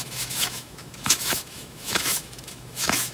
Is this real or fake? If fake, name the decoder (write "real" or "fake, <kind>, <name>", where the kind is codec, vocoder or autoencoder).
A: fake, autoencoder, DAC-VAE